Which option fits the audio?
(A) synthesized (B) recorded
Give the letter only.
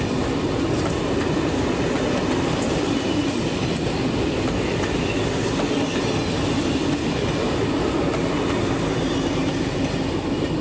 B